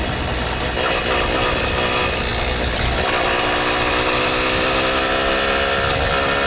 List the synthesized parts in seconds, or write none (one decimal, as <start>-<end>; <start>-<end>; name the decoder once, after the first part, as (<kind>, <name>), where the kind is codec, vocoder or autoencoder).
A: none